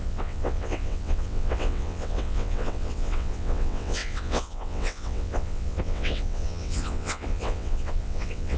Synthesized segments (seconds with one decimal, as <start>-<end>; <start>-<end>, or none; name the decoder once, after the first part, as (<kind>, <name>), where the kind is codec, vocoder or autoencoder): 0.0-8.6 (vocoder, WaveNeXt)

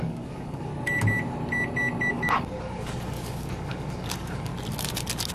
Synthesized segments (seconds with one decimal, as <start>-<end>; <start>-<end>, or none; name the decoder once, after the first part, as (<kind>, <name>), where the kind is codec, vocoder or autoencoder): 0.0-0.7 (codec, DAC); 2.1-4.5

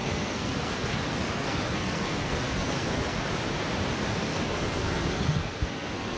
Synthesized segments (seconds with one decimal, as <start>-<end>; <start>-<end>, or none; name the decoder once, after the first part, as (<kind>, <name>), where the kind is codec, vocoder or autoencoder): 0.0-3.3 (codec, SNAC); 4.3-6.2